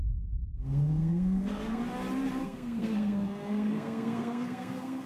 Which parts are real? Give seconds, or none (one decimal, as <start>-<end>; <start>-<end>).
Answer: 1.8-2.4